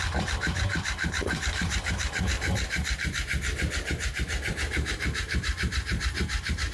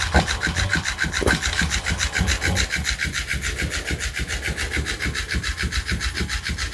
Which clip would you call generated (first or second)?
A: first